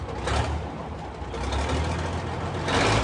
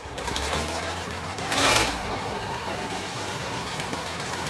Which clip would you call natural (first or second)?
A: first